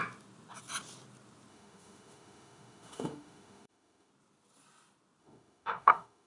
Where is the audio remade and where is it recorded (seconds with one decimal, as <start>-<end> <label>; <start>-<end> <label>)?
0.0-1.5 recorded; 1.5-4.1 remade; 4.1-5.2 recorded; 5.2-6.3 remade